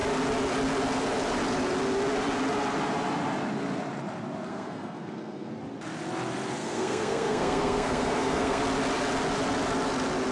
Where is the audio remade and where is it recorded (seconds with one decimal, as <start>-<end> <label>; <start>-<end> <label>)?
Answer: 0.0-4.5 recorded; 4.5-5.5 remade; 5.5-6.6 recorded; 6.6-8.6 remade; 8.6-10.3 recorded